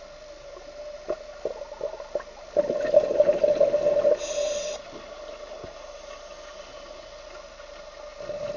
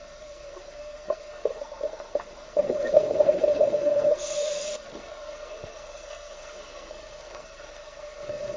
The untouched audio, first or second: first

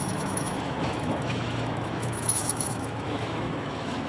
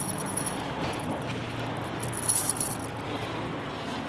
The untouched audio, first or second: second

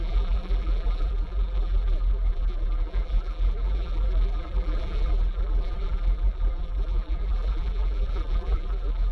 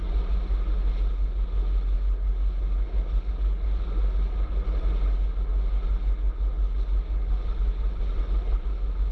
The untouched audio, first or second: second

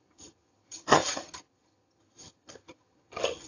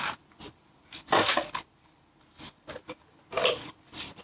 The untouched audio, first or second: second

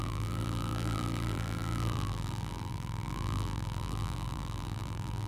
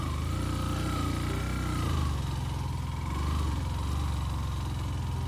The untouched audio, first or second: second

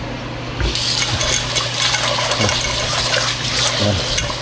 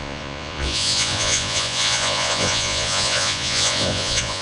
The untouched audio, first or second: first